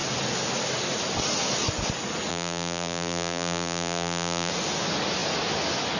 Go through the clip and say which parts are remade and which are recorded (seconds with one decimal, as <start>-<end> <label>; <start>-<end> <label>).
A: 0.0-2.3 recorded; 2.3-4.5 remade; 4.5-6.0 recorded